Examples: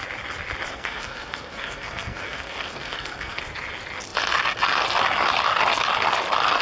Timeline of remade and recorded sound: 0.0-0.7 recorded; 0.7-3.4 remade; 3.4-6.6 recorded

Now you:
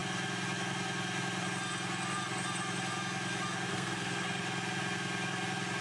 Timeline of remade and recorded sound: 0.0-3.7 recorded; 3.7-4.4 remade; 4.4-5.8 recorded

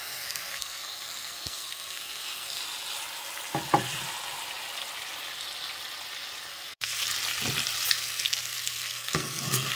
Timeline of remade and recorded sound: 0.0-2.6 remade; 2.6-6.5 recorded; 6.5-7.0 remade; 7.0-7.9 recorded; 7.9-9.8 remade

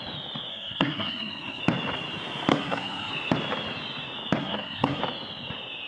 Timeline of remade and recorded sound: 0.0-0.5 recorded; 0.5-1.6 remade; 1.6-2.5 recorded; 2.5-3.1 remade; 3.1-4.4 recorded; 4.4-5.0 remade; 5.0-5.9 recorded

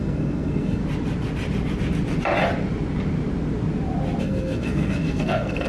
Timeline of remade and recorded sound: 0.0-0.8 remade; 0.8-4.2 recorded; 4.2-5.7 remade

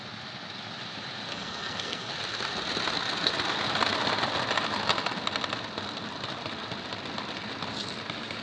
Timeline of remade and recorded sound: 0.0-1.3 recorded; 1.3-2.1 remade; 2.1-8.4 recorded